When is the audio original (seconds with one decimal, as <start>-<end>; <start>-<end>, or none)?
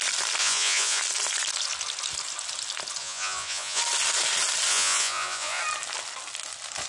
0.0-0.4; 1.0-3.0; 3.8-4.7; 5.6-6.9